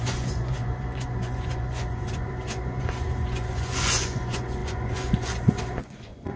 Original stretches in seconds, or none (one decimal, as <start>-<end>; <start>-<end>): none

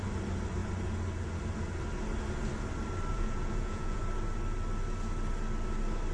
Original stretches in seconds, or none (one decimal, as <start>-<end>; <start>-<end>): 0.0-3.1; 4.0-6.1

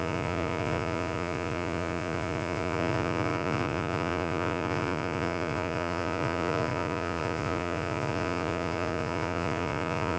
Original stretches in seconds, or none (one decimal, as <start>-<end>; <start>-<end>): none

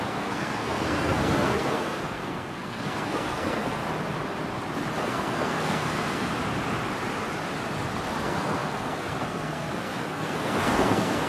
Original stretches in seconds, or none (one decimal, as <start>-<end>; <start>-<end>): 3.8-5.0; 6.3-8.2

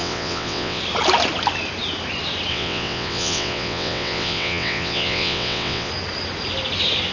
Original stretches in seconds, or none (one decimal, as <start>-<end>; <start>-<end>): 0.8-2.5; 5.9-7.1

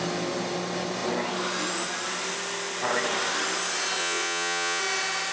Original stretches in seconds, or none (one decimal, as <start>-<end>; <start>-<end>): 0.0-4.0; 4.8-5.3